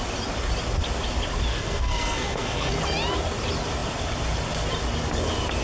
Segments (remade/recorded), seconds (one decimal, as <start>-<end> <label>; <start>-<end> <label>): 0.0-1.5 recorded; 1.5-2.7 remade; 2.7-5.6 recorded